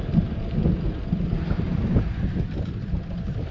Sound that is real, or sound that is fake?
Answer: real